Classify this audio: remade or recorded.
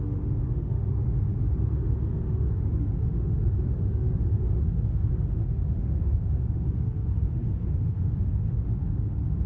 remade